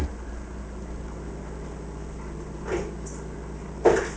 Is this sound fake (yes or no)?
no